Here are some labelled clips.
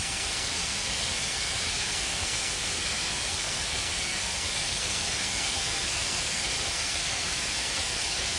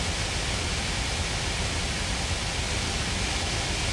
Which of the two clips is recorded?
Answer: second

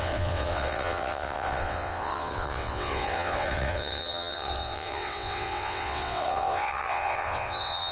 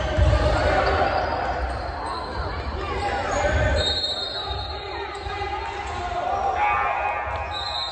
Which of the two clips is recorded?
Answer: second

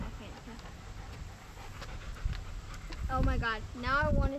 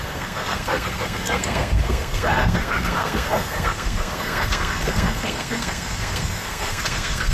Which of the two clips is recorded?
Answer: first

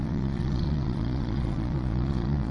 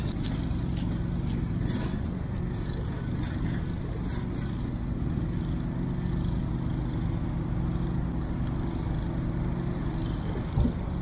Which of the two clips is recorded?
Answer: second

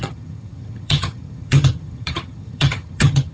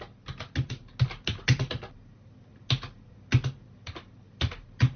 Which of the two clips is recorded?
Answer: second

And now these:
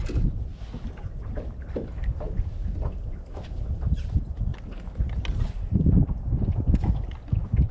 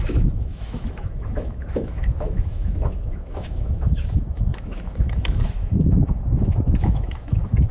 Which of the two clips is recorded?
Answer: first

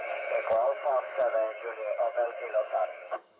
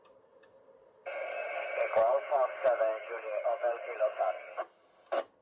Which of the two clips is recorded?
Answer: second